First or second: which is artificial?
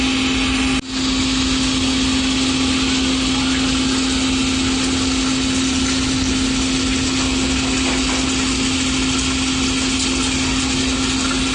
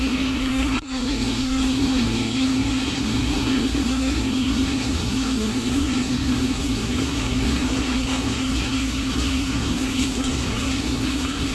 second